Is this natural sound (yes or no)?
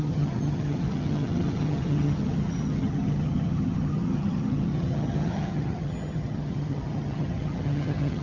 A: no